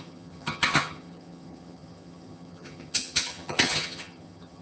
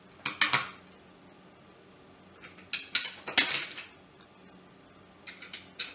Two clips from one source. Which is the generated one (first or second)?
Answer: first